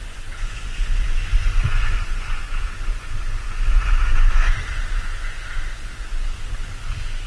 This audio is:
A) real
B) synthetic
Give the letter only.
B